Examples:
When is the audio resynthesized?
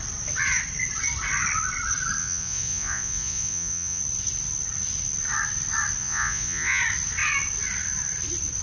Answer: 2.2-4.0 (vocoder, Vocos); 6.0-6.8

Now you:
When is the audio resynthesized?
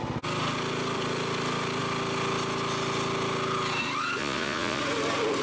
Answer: 4.2-4.8 (vocoder, Vocos)